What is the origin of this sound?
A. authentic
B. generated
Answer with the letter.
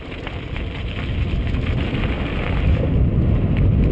A